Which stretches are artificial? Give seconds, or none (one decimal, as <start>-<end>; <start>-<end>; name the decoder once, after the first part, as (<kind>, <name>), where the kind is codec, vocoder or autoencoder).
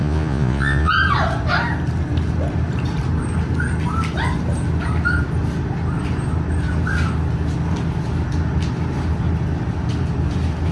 0.0-0.9 (vocoder, Vocos)